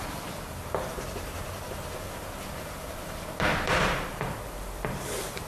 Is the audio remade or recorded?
remade